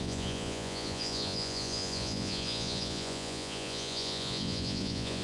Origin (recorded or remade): remade